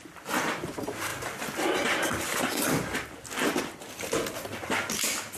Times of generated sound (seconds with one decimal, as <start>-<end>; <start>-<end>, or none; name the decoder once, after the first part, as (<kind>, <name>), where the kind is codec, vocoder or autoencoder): none